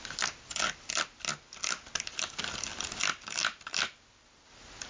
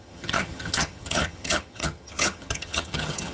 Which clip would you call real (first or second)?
first